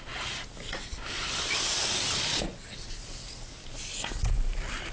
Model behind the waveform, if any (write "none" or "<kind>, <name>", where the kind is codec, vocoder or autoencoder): none